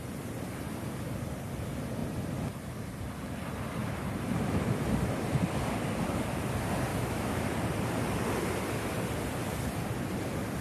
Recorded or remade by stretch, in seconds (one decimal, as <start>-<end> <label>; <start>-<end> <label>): 0.0-6.9 recorded; 6.9-7.4 remade; 7.4-10.6 recorded